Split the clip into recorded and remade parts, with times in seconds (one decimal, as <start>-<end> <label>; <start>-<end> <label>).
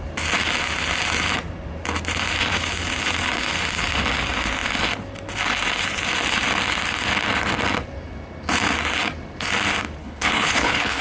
0.0-10.0 recorded; 10.0-11.0 remade